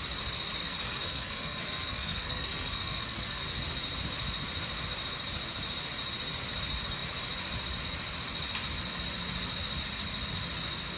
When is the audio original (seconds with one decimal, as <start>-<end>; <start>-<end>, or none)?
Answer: 0.0-0.6; 3.4-11.0